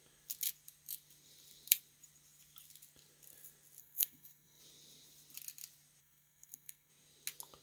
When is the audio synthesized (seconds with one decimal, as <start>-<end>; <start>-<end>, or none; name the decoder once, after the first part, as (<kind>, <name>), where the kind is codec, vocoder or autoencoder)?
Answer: 3.8-4.6 (codec, SNAC); 6.0-6.9